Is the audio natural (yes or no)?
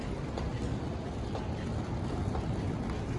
yes